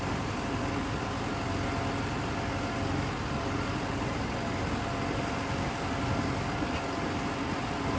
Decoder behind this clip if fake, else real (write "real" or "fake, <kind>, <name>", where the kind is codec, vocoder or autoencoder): real